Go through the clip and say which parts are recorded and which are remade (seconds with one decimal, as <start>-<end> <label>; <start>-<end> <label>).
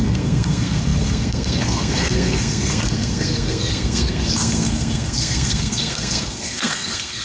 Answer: 0.0-7.2 remade